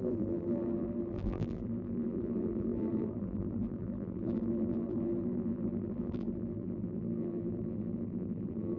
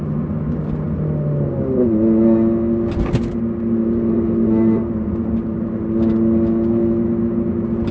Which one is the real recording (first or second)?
second